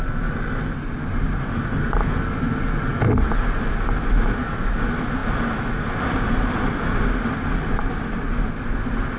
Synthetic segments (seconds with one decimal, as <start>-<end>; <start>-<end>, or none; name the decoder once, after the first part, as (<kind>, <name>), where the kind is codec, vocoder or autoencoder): none